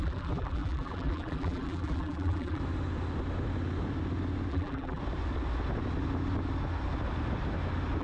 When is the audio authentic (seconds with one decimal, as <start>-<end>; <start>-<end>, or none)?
2.6-4.5; 5.0-8.0